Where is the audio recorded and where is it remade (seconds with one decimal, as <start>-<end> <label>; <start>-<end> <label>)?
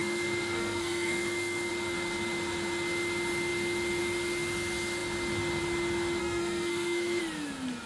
0.0-1.7 remade; 1.7-6.2 recorded; 6.2-7.2 remade; 7.2-7.9 recorded